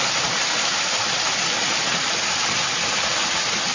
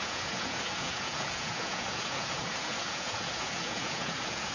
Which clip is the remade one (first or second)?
second